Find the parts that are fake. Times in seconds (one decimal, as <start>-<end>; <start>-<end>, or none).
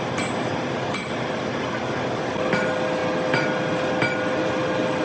none